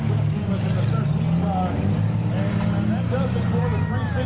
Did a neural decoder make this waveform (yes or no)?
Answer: no